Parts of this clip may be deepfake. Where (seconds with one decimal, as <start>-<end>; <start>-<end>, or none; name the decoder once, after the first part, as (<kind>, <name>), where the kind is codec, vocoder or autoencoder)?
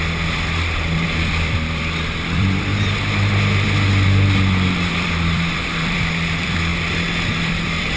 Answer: 0.0-2.7 (vocoder, BigVGAN v2); 4.9-6.7; 7.4-8.0